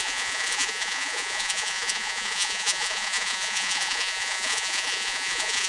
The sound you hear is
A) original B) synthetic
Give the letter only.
B